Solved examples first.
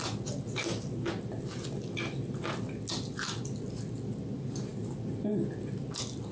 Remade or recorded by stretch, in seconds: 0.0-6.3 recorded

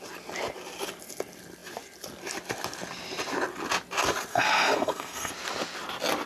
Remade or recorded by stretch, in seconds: 0.0-4.3 recorded; 4.3-5.3 remade; 5.3-6.3 recorded

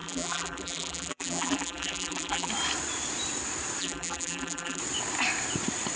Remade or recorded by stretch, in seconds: 0.0-2.5 remade; 2.5-3.8 recorded; 3.8-4.8 remade; 4.8-6.0 recorded

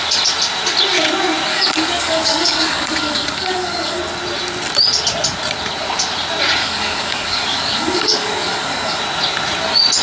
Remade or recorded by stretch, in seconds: 0.0-1.5 recorded; 1.5-4.0 remade; 4.0-6.6 recorded; 6.6-9.0 remade; 9.0-10.0 recorded

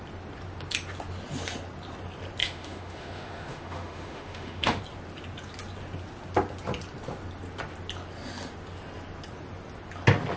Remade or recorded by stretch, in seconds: 0.0-2.4 recorded; 2.4-4.8 remade; 4.8-10.4 recorded

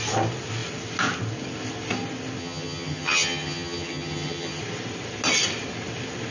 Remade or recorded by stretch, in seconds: 0.0-2.4 recorded; 2.4-4.6 remade; 4.6-6.3 recorded